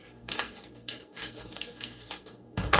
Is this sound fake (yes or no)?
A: yes